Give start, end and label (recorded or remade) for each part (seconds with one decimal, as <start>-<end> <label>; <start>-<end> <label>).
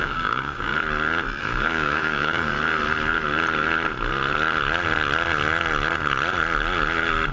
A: 0.0-0.7 remade; 0.7-1.4 recorded; 1.4-2.5 remade; 2.5-7.3 recorded